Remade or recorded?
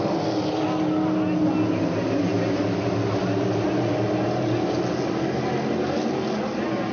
recorded